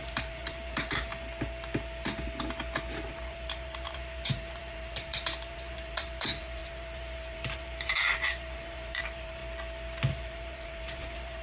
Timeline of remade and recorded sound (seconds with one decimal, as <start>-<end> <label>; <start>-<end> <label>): 0.0-1.1 remade; 1.1-3.1 recorded; 3.1-9.4 remade; 9.4-10.1 recorded; 10.1-11.4 remade